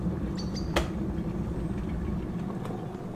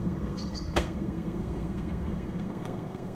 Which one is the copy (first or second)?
second